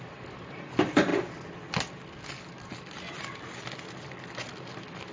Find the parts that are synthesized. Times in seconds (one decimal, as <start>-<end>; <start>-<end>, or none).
none